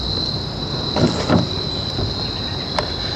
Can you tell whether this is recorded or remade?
remade